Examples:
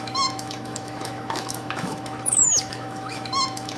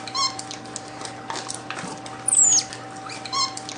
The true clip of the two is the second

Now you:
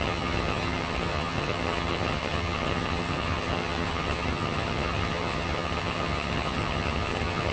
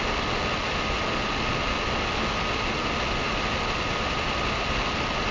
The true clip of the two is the second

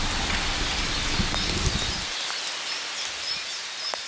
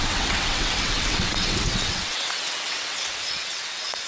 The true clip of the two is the first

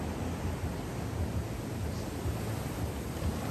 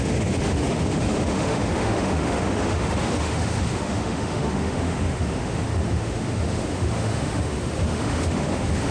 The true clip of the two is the first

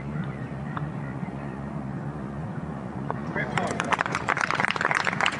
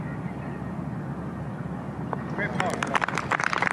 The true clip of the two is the second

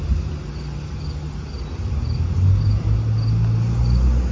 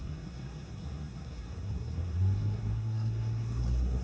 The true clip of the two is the first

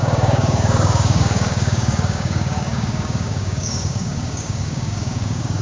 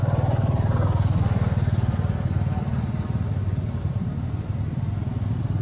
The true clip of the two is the second